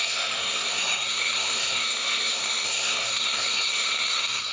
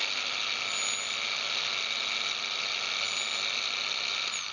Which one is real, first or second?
second